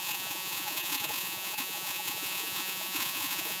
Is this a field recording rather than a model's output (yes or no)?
no